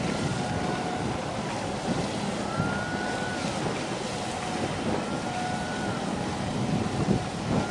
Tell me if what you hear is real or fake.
real